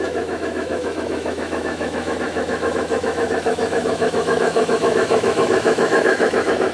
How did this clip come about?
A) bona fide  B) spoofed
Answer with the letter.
B